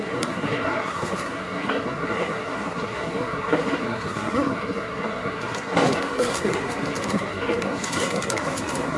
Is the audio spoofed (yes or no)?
yes